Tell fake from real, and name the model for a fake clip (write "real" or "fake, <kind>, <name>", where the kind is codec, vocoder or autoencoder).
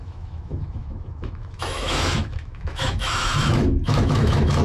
fake, autoencoder, DAC-VAE